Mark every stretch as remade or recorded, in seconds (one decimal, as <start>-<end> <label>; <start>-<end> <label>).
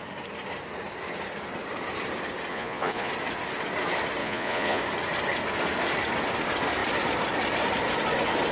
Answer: 0.0-2.5 recorded; 2.5-3.1 remade; 3.1-4.2 recorded; 4.2-4.8 remade; 4.8-8.5 recorded